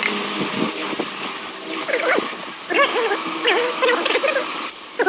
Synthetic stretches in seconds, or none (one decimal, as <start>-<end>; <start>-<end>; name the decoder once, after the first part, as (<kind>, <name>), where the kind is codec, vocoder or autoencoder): 1.8-2.3 (autoencoder, DAC-VAE); 2.9-4.4